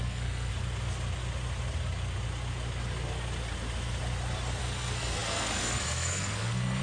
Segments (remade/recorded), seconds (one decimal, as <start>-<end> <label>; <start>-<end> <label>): 0.0-0.5 remade; 0.5-4.6 recorded; 4.6-6.8 remade